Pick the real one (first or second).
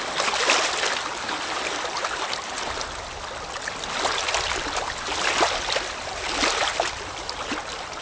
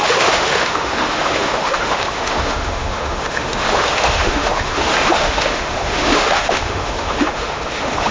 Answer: first